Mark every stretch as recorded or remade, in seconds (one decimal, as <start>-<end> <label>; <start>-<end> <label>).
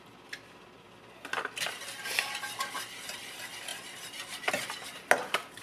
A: 0.0-5.6 recorded